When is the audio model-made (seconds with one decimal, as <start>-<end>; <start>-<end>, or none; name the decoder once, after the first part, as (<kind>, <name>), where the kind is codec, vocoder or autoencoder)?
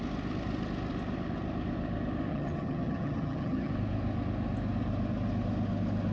2.3-3.7 (vocoder, HiFi-GAN)